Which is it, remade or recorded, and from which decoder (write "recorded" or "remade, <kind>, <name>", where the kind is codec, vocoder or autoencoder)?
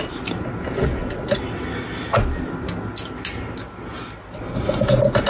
recorded